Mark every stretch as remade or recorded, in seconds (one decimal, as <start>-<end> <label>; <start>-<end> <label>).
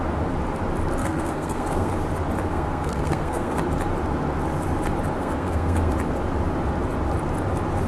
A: 0.0-1.0 recorded; 1.0-1.9 remade; 1.9-2.5 recorded; 2.5-3.6 remade; 3.6-5.2 recorded; 5.2-5.9 remade; 5.9-7.9 recorded